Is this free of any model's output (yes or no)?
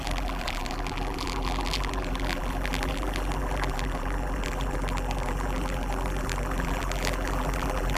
no